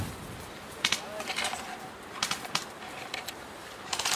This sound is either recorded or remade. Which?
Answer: recorded